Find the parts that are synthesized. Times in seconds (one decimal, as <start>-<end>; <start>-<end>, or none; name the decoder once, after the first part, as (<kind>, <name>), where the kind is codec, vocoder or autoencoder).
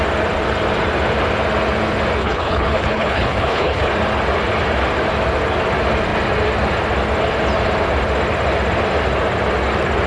2.2-3.9 (codec, HILCodec)